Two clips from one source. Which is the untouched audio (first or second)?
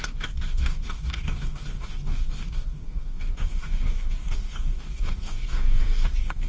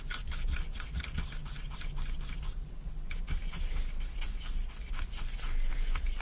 second